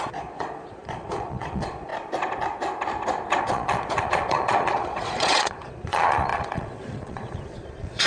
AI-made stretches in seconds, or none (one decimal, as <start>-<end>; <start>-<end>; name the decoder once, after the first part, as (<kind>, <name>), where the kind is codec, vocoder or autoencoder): 0.0-1.9 (vocoder, Vocos); 3.4-8.1